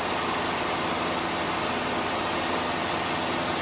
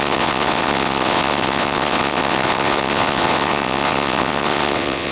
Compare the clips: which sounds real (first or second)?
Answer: first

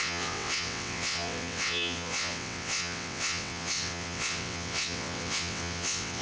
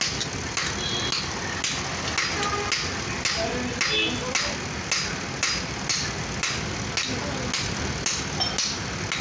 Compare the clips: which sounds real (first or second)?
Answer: second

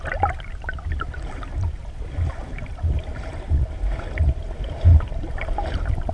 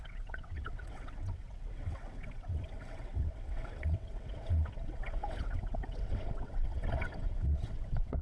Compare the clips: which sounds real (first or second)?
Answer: first